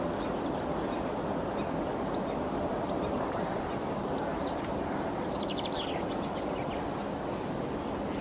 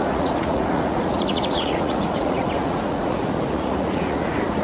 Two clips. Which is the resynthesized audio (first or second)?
second